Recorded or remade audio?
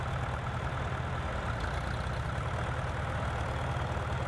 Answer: recorded